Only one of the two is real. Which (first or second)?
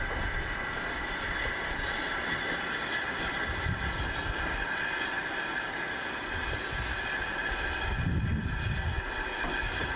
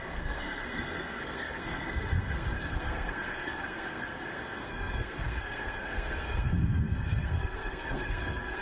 first